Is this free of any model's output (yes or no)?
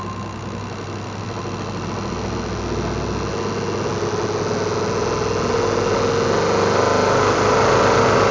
yes